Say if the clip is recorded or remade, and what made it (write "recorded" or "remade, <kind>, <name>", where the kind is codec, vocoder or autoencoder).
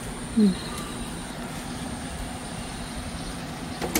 recorded